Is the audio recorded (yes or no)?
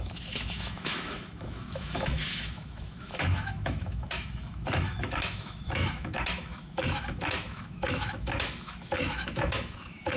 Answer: no